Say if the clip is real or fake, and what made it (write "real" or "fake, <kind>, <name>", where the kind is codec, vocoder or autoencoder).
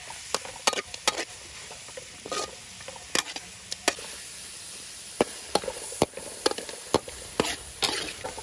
real